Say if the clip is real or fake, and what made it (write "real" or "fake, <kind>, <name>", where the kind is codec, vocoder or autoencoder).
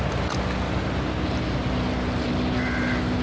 real